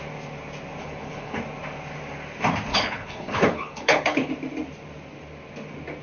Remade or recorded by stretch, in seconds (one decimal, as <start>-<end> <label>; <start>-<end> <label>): 0.0-0.8 recorded; 0.8-1.4 remade; 1.4-2.7 recorded; 2.7-4.3 remade; 4.3-6.0 recorded